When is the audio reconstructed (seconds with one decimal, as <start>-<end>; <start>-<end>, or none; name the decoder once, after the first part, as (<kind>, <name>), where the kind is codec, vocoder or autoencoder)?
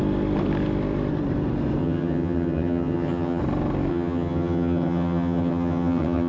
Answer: 1.8-3.4 (vocoder, HiFi-GAN); 3.9-6.3